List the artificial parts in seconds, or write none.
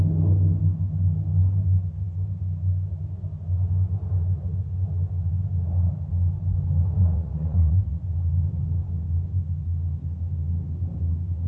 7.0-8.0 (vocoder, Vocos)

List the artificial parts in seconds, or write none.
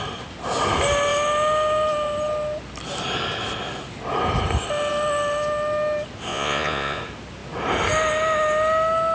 6.3-7.0 (vocoder, Vocos)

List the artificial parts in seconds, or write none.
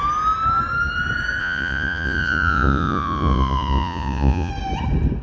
1.4-4.5 (vocoder, Vocos)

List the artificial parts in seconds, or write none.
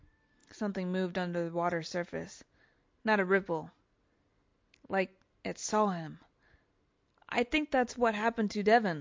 none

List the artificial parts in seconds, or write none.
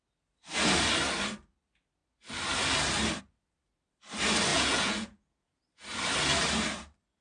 4.5-5.6 (vocoder, Vocos)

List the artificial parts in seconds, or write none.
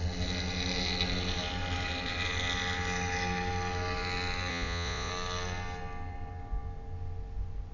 4.5-5.1 (vocoder, Vocos)